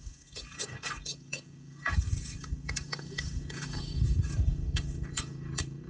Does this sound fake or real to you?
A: fake